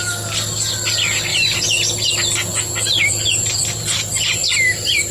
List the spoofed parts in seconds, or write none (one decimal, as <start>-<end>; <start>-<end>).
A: 1.3-2.1